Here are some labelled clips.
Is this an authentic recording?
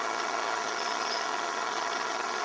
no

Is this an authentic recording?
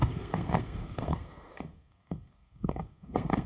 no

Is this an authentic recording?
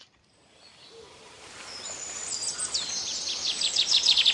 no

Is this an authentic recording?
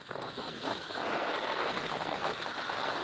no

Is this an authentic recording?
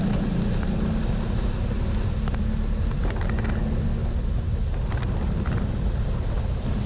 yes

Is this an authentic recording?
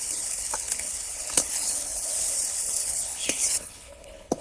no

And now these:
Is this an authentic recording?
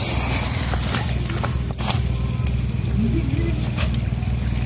yes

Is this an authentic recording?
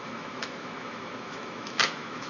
no